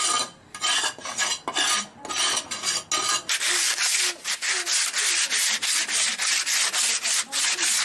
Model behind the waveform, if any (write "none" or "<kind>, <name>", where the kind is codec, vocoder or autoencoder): none